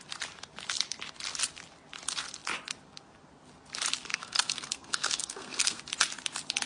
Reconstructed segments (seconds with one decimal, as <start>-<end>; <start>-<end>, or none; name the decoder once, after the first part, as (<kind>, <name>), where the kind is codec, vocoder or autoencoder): 4.1-5.8 (codec, SNAC)